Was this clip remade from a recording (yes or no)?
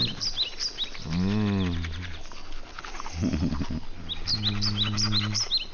no